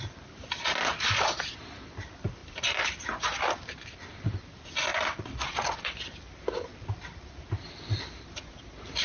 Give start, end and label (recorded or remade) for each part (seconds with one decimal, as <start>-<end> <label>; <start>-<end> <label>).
0.0-2.4 recorded; 2.4-3.4 remade; 3.4-6.7 recorded; 6.7-7.7 remade; 7.7-9.0 recorded